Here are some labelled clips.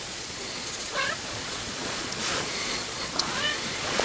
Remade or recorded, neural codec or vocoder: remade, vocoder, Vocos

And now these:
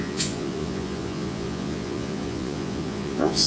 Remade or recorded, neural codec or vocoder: remade, vocoder, Vocos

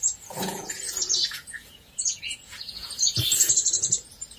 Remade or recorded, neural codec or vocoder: remade, vocoder, Vocos